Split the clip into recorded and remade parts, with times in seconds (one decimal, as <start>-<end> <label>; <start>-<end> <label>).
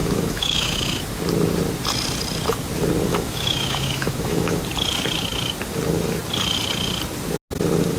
0.0-1.0 remade; 1.0-3.1 recorded; 3.1-4.6 remade; 4.6-8.0 recorded